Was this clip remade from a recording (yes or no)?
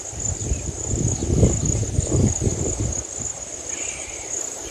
no